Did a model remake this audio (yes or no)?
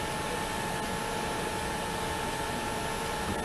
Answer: no